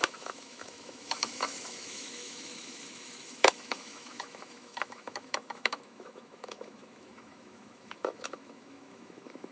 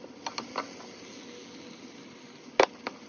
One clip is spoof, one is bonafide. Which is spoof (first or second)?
first